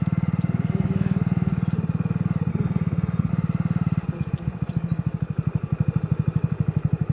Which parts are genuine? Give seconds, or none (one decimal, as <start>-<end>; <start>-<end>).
0.0-2.5; 3.3-7.1